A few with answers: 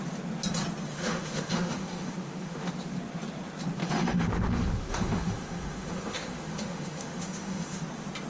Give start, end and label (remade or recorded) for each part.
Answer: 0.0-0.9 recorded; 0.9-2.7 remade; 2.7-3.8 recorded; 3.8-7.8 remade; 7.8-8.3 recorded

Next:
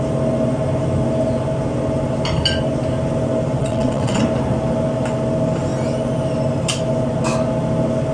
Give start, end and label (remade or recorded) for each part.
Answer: 0.0-3.6 recorded; 3.6-4.2 remade; 4.2-8.1 recorded

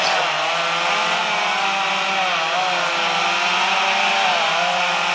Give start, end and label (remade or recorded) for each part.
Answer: 0.0-5.1 recorded

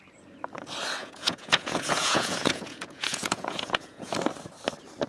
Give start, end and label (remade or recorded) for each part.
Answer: 0.0-1.0 recorded; 1.0-4.1 remade; 4.1-5.1 recorded

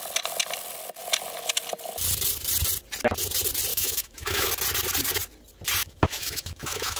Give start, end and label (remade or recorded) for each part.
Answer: 0.0-3.7 recorded; 3.7-4.5 remade; 4.5-5.8 recorded; 5.8-7.0 remade